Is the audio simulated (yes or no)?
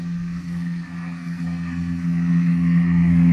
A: yes